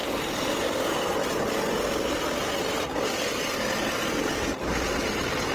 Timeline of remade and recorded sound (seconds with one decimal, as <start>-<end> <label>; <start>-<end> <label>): 0.0-5.5 recorded